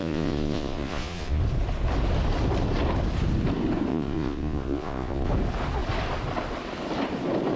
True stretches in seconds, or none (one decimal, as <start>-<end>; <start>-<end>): 1.4-3.9; 5.3-7.6